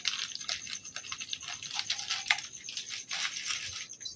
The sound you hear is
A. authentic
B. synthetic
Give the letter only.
A